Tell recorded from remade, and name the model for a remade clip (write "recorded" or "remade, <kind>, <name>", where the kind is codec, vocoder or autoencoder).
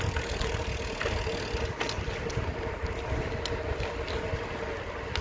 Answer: recorded